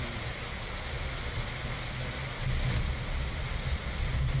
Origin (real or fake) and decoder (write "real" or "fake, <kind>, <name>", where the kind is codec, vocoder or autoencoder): real